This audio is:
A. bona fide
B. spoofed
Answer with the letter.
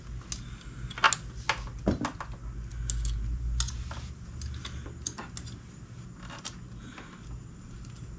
A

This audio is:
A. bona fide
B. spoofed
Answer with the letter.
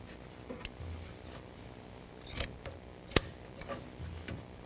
A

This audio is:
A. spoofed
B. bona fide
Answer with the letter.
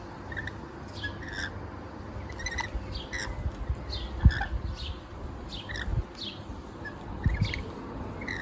B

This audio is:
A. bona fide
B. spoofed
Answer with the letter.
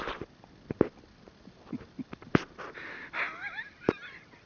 A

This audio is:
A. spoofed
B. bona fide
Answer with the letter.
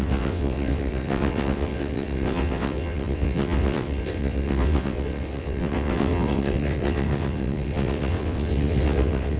A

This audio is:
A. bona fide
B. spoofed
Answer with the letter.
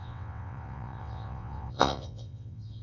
B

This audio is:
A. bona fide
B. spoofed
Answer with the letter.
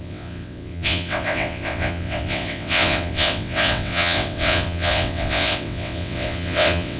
B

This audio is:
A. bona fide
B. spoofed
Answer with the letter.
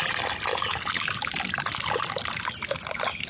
A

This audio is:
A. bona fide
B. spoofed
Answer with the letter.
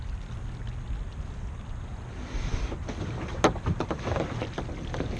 A